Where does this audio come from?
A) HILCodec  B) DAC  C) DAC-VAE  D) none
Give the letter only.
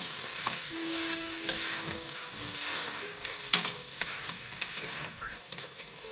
B